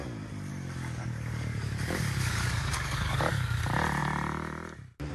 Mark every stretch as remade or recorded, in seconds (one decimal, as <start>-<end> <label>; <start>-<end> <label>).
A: 0.0-0.5 recorded; 0.5-3.6 remade; 3.6-5.1 recorded